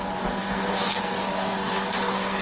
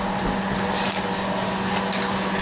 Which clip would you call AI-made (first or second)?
first